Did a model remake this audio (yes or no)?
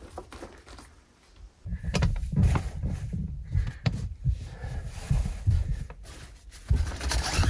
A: yes